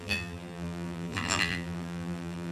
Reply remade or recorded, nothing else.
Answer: remade